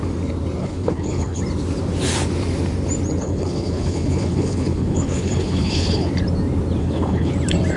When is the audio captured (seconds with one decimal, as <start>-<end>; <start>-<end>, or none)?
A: 0.0-0.6; 1.4-3.2; 6.1-6.8; 7.3-7.8